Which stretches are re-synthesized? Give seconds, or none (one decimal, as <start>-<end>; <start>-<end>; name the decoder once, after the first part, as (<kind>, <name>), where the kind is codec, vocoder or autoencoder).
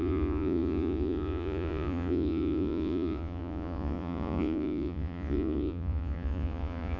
0.0-7.0 (vocoder, Vocos)